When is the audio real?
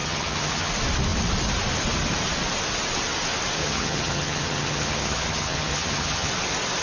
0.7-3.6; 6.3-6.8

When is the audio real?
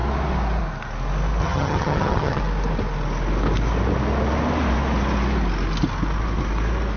0.0-1.4; 2.4-7.0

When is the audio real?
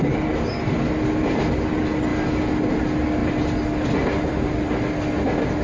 0.0-5.6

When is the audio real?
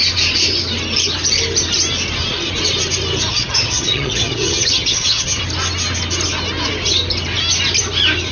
0.0-3.3; 5.4-8.3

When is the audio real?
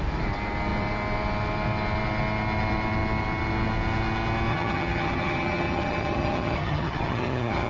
0.0-4.5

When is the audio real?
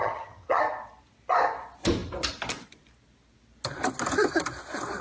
0.6-5.0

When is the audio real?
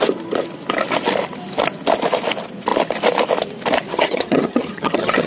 0.0-3.9